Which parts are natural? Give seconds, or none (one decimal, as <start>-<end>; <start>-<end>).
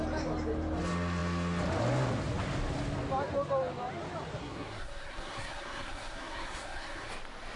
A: 0.0-4.4; 7.1-7.6